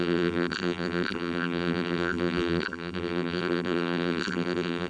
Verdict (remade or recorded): remade